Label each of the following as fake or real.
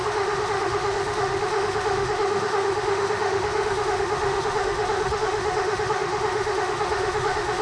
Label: fake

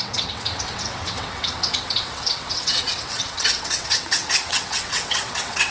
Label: fake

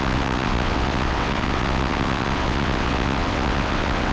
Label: fake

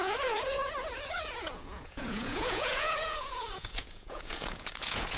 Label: fake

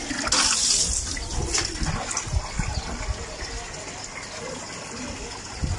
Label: real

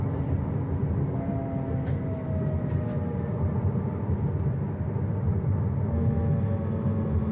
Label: real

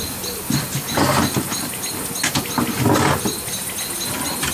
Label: real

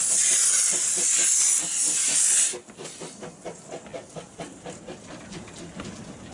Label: real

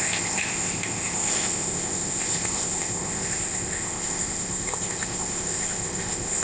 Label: fake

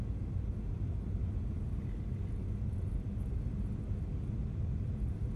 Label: real